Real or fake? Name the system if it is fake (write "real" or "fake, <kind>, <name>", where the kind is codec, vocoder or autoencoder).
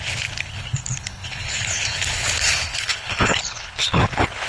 fake, codec, HILCodec